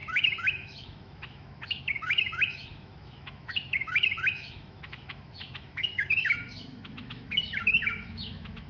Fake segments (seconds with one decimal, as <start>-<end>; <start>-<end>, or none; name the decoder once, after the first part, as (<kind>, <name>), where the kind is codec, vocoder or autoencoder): 0.0-8.7 (autoencoder, DAC-VAE)